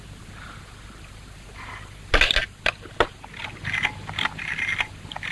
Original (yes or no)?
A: yes